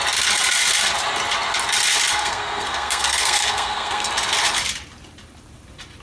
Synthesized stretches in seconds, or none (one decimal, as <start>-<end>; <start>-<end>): 2.1-4.1